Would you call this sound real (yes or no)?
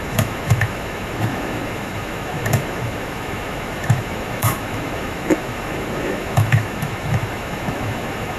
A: no